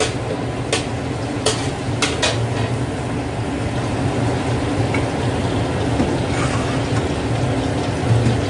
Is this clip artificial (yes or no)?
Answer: no